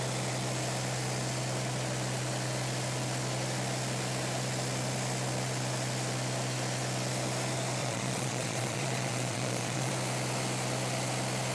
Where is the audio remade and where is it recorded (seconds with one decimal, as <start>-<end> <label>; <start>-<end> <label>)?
0.0-7.8 recorded; 7.8-9.9 remade; 9.9-11.5 recorded